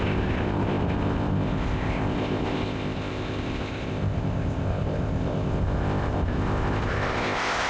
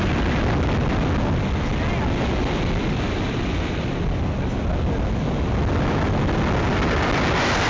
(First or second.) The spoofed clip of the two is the first